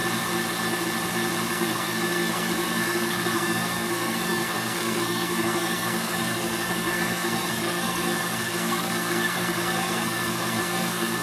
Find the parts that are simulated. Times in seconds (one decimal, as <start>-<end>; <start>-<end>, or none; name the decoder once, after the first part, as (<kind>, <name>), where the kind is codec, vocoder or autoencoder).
1.5-11.2 (codec, SNAC)